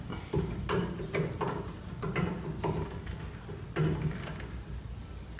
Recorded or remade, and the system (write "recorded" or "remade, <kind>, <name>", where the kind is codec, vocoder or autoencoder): recorded